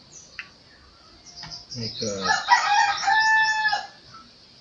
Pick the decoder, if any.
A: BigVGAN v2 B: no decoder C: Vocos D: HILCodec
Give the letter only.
B